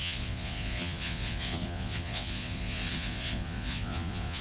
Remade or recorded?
remade